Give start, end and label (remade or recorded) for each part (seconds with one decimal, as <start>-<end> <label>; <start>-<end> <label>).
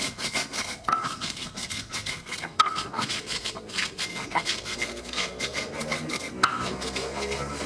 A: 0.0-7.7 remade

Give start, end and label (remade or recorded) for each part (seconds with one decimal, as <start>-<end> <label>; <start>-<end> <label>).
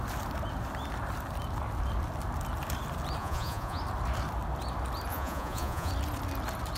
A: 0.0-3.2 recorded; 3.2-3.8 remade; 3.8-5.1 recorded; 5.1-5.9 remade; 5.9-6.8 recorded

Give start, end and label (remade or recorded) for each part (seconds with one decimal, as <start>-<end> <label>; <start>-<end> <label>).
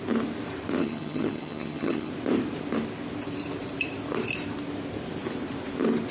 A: 0.0-0.8 recorded; 0.8-2.1 remade; 2.1-6.1 recorded